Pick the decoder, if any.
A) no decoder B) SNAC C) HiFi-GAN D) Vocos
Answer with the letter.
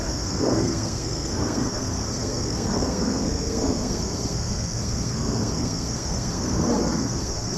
B